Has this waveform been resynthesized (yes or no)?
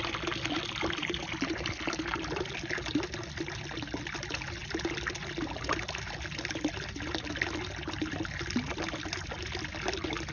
no